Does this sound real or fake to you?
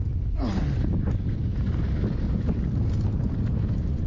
real